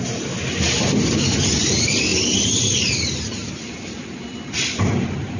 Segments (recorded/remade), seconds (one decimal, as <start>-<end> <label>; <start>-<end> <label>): 0.0-5.4 recorded